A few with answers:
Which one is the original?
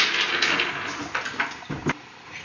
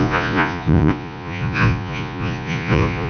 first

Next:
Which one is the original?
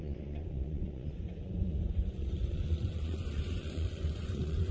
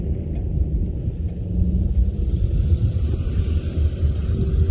second